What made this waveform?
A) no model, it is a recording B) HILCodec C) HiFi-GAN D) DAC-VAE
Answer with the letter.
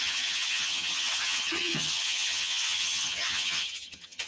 C